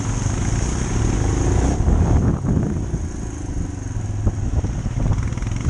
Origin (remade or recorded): recorded